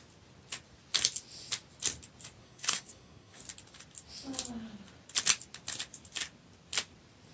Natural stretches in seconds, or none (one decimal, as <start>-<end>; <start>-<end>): 0.0-2.4; 3.4-7.3